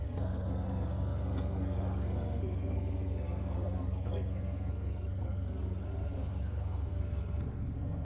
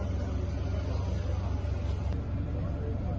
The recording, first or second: second